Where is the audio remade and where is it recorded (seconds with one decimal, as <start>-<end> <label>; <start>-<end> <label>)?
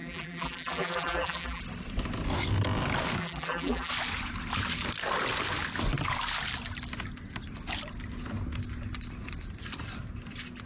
0.0-1.6 remade; 1.6-3.2 recorded; 3.2-3.9 remade; 3.9-10.7 recorded